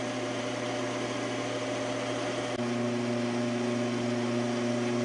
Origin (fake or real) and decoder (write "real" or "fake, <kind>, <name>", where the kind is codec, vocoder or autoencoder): real